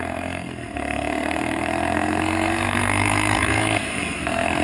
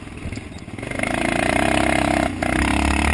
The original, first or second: second